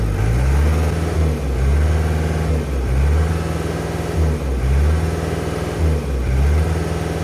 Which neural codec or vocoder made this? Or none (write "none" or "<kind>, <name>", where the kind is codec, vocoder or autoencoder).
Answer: none